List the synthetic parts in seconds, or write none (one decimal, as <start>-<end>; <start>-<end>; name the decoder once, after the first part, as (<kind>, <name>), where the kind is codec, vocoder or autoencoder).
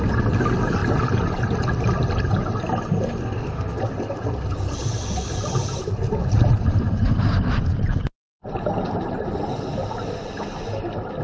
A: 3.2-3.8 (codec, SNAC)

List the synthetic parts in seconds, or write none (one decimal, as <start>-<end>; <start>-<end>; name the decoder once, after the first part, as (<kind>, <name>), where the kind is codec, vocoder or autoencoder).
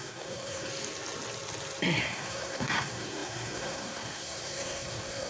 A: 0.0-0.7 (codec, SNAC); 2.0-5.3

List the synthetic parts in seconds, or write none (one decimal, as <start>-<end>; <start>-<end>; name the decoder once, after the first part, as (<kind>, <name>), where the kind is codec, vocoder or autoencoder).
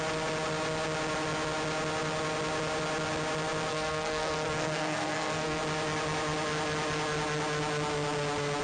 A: 3.7-5.6 (codec, SNAC)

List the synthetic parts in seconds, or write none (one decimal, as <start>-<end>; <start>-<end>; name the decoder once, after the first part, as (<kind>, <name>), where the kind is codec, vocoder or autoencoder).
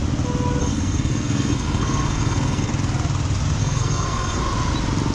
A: 0.6-2.7 (codec, SNAC); 3.6-4.4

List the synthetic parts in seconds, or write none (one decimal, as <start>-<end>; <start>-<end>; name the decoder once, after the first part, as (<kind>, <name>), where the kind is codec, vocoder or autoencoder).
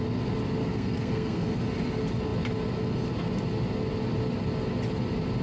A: 0.6-1.5 (codec, SNAC)